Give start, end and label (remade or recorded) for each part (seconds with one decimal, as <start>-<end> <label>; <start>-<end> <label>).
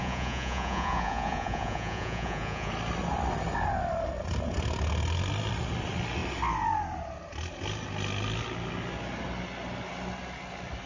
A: 0.0-2.7 remade; 2.7-10.9 recorded